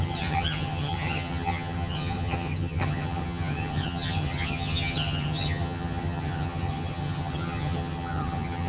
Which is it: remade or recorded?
remade